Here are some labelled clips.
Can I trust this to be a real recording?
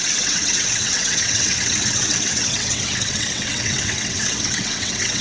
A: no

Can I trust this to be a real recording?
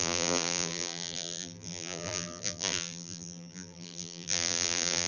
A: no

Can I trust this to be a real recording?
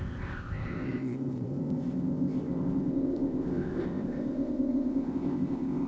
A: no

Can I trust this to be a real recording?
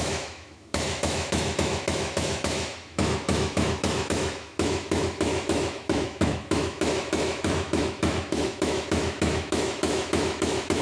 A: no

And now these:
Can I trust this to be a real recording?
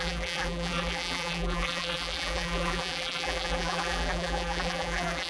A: no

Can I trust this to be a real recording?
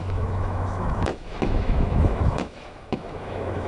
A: no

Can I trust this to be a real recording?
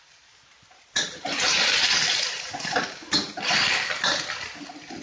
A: yes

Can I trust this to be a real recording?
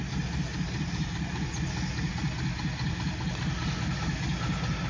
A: yes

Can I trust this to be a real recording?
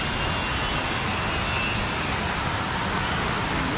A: yes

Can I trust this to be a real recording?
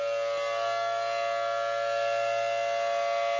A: yes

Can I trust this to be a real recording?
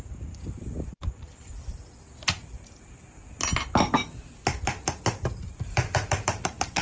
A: no